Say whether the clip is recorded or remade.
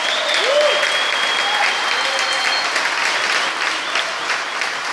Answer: recorded